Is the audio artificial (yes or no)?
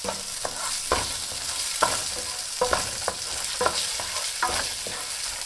no